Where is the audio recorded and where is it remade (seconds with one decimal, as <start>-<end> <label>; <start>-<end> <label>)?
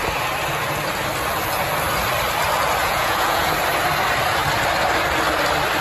0.0-2.8 recorded; 2.8-3.5 remade; 3.5-5.8 recorded